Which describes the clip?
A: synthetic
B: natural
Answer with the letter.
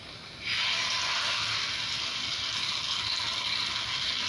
B